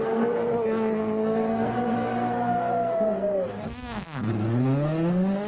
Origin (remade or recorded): remade